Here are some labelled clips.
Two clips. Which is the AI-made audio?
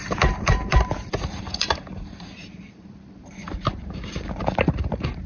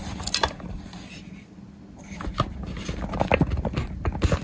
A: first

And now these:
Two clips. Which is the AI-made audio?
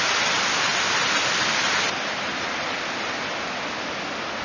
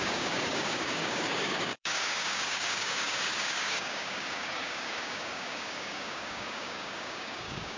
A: second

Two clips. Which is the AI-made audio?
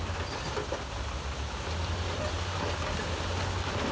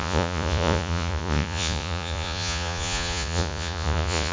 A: second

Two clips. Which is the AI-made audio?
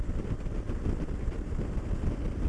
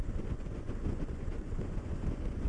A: second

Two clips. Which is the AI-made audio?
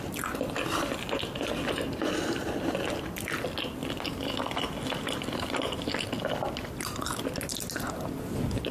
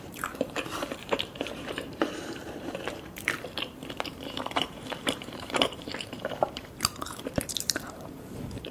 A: second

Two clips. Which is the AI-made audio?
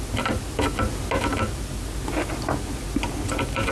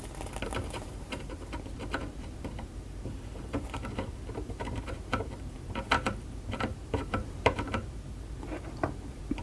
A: second